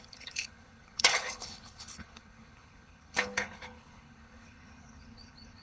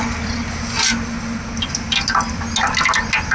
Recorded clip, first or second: second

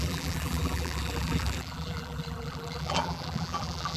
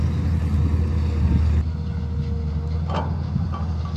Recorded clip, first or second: second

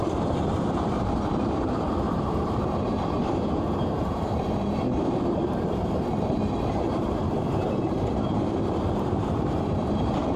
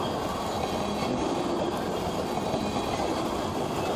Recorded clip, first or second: second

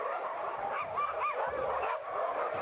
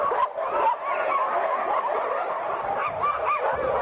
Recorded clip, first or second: second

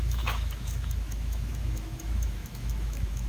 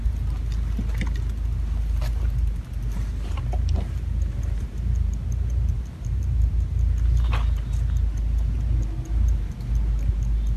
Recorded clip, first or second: second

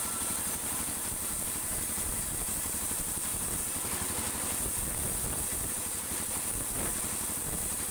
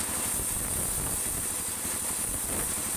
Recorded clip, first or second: second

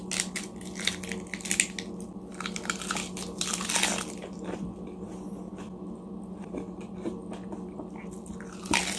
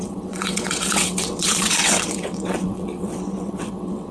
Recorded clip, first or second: first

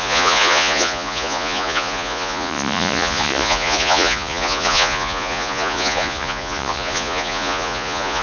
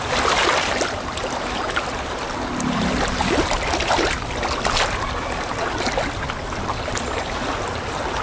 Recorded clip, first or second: second